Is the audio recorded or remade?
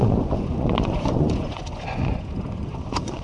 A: remade